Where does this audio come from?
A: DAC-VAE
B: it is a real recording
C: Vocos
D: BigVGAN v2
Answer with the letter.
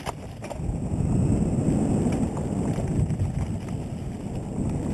B